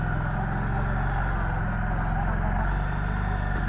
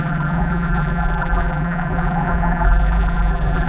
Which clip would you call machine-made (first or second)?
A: second